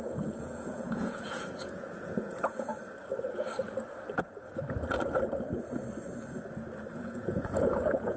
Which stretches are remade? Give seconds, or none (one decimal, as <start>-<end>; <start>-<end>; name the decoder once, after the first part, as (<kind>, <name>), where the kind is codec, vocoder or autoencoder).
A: 0.0-2.7 (vocoder, Vocos); 6.9-8.2

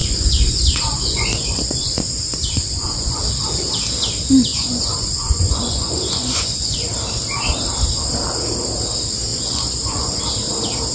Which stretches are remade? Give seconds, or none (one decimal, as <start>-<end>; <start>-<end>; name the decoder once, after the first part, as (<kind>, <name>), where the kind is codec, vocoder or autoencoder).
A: 0.0-3.2 (vocoder, Vocos); 4.5-6.9; 9.3-10.2

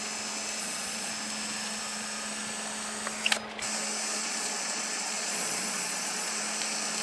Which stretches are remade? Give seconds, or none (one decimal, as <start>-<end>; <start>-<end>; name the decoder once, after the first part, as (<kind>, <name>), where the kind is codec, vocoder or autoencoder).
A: 0.6-1.1 (vocoder, Vocos); 4.2-6.3

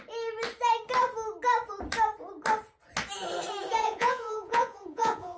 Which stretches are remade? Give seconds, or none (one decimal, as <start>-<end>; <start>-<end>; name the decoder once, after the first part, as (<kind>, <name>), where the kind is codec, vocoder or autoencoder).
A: 3.8-5.4 (vocoder, Vocos)

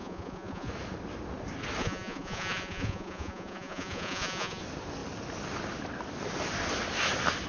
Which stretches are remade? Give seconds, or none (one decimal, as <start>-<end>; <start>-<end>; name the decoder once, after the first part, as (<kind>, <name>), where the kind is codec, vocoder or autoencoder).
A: 0.0-0.7 (vocoder, Vocos); 1.8-4.6

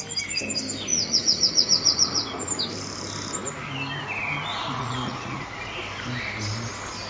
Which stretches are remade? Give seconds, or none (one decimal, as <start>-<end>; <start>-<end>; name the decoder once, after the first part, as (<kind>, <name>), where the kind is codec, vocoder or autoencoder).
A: 0.9-2.6 (vocoder, Vocos); 4.5-5.8

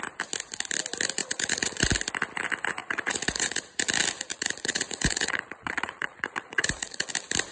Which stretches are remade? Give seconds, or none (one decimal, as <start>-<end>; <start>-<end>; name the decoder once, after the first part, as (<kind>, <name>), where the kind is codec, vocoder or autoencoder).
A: 1.2-1.8 (vocoder, Vocos); 2.8-3.6; 4.3-7.1